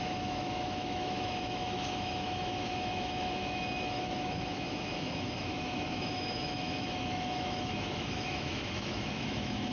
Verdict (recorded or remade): remade